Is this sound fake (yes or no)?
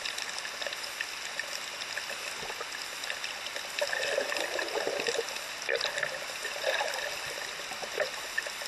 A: no